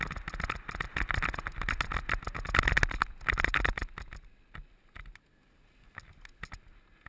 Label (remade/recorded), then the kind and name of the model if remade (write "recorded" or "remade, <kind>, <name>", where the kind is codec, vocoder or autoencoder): recorded